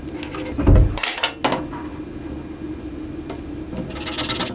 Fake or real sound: real